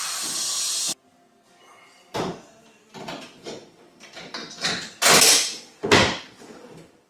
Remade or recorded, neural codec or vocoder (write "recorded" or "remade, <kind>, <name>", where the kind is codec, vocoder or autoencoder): recorded